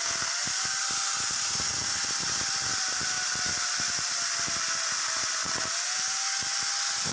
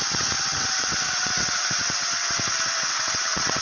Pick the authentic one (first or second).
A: first